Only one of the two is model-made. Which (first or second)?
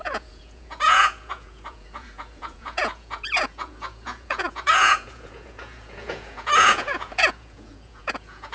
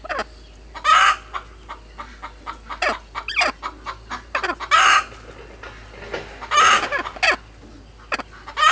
first